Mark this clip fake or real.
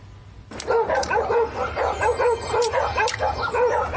real